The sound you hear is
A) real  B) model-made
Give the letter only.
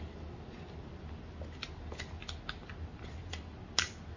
A